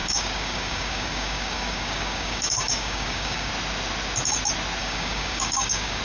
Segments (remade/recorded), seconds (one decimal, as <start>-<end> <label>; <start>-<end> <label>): 0.0-3.5 remade; 3.5-4.8 recorded; 4.8-6.0 remade